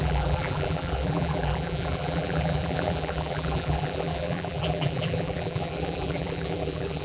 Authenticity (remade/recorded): remade